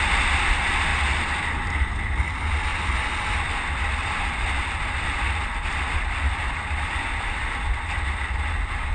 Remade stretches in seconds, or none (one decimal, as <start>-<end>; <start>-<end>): none